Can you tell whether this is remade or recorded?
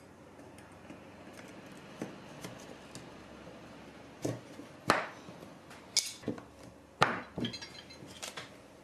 recorded